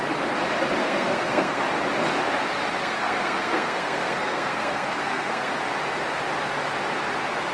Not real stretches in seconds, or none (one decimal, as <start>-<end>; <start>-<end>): 0.8-1.6; 2.8-5.5